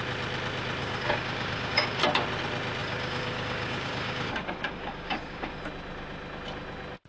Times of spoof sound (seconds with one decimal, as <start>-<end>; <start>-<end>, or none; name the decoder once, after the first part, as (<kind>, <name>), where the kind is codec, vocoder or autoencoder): 0.8-2.0 (codec, DAC); 2.8-5.6